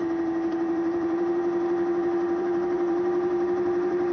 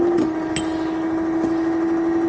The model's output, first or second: first